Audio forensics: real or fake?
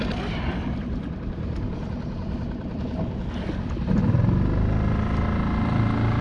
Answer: real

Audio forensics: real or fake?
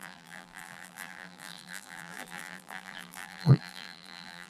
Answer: fake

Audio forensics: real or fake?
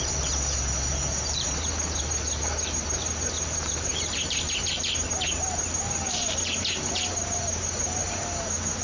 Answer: fake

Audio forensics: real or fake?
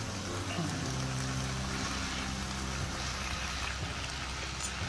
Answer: real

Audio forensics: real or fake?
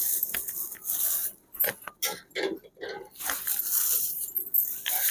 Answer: real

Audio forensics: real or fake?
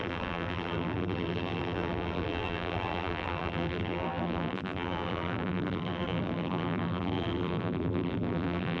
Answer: fake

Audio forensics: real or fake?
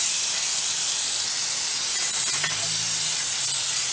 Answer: real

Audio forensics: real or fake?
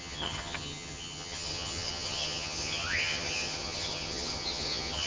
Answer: fake